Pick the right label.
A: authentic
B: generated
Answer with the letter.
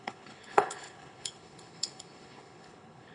B